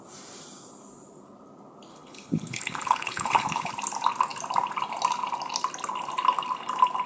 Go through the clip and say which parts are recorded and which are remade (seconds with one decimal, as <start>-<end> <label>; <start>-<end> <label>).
0.0-1.9 recorded; 1.9-3.7 remade; 3.7-7.1 recorded